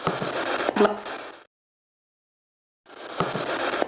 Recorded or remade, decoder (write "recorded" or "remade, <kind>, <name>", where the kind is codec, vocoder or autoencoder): recorded